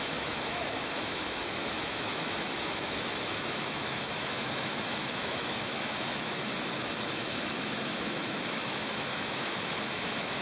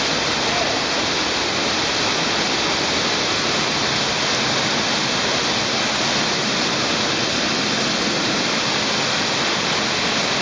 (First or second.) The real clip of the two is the second